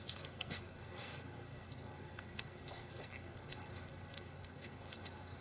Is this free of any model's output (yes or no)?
no